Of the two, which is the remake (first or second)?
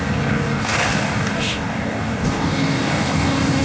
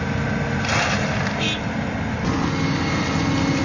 first